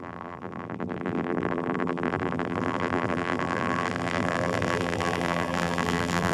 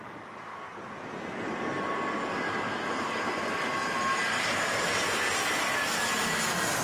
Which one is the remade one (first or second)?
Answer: first